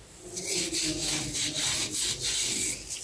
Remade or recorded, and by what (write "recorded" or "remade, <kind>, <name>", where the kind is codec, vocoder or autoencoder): recorded